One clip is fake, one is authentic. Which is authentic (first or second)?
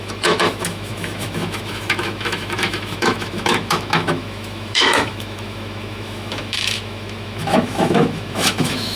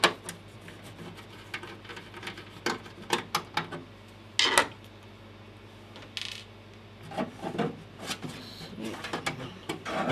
second